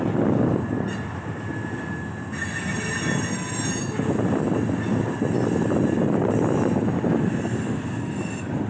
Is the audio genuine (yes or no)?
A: yes